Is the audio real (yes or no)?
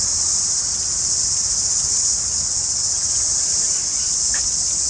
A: yes